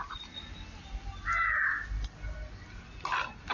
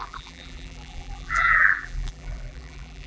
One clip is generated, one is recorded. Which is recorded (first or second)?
first